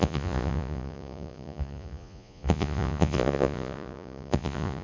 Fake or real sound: fake